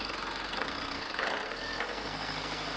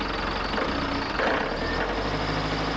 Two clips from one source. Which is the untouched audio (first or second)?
second